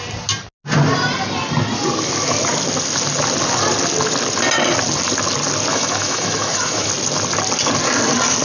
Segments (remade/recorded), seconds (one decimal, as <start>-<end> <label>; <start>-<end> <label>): 0.0-5.7 recorded; 5.7-6.9 remade; 6.9-8.4 recorded